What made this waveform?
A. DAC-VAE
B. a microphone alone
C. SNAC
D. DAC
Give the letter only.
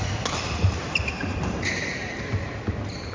B